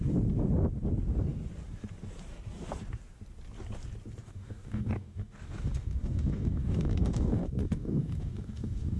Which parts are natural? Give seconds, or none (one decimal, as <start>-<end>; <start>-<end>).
0.0-4.2